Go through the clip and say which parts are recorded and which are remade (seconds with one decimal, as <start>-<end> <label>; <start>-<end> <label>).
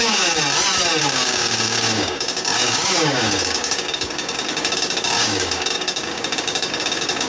0.0-0.4 remade; 0.4-1.0 recorded; 1.0-7.3 remade